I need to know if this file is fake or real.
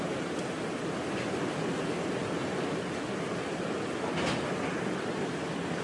real